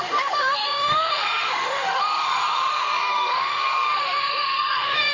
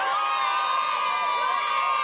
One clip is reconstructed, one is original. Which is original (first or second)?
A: second